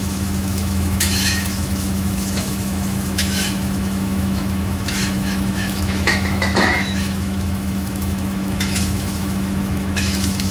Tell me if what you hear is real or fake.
fake